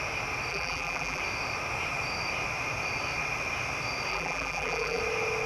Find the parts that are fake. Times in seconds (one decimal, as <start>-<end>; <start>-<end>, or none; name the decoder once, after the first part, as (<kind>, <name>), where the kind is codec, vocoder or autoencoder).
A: 0.5-1.2 (vocoder, BigVGAN v2); 4.1-5.0